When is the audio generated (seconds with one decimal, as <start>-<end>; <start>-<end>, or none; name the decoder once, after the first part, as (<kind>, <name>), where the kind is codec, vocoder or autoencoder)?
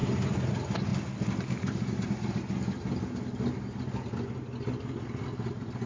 0.0-0.5 (vocoder, BigVGAN v2); 0.9-2.4